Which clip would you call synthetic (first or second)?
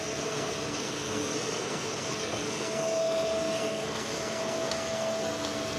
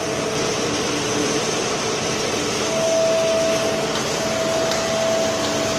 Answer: first